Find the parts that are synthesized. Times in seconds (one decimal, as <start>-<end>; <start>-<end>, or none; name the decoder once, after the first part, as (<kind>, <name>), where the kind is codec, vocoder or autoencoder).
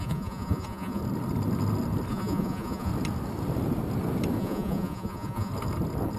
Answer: 0.0-1.0 (vocoder, Vocos); 2.1-2.9; 4.4-5.5